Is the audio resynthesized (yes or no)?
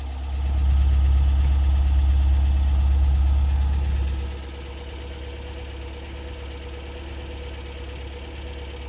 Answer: no